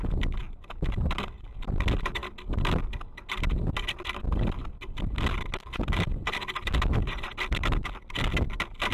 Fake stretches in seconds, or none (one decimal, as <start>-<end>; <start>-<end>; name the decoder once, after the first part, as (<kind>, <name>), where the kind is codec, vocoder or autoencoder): none